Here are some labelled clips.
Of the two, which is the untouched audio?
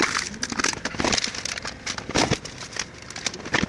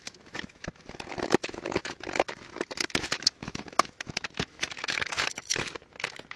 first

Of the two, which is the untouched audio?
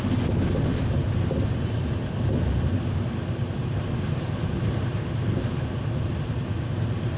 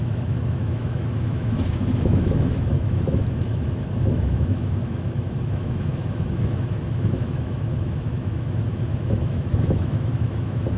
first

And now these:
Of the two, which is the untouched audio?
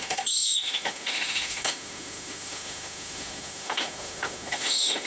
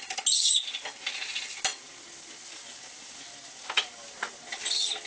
second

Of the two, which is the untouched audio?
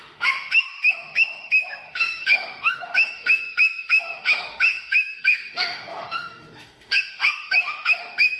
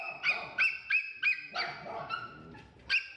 second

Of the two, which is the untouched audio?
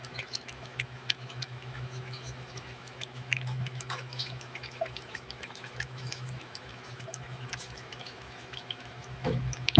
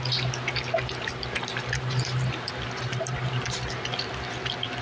second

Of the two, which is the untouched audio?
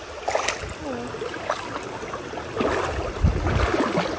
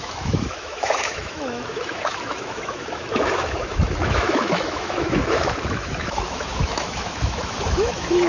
first